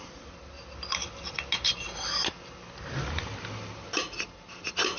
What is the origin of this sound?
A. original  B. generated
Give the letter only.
A